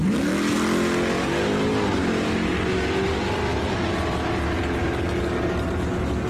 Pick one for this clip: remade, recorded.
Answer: recorded